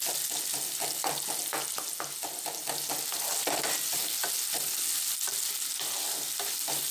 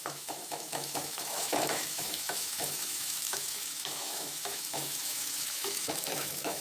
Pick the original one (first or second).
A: first